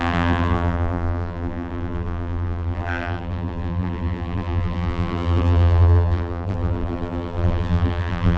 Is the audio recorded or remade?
remade